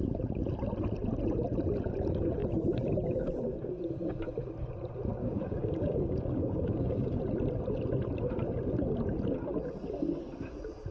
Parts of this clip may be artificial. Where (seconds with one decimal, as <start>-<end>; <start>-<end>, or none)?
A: 5.2-7.2